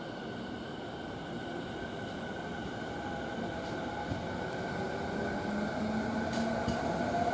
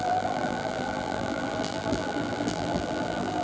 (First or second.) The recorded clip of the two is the first